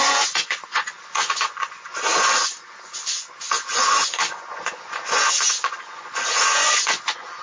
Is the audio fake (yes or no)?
yes